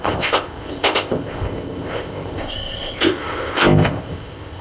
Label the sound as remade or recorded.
remade